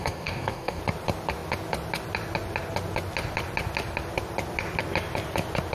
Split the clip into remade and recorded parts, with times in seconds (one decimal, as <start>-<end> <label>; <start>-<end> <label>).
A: 0.0-0.8 remade; 0.8-5.7 recorded